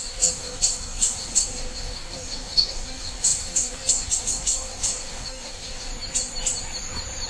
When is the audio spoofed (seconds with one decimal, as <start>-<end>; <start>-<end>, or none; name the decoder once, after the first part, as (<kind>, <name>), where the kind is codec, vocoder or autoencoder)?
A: 0.0-5.9 (codec, DAC)